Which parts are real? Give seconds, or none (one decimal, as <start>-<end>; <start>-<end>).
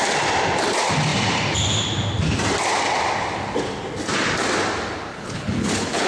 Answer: 0.0-5.1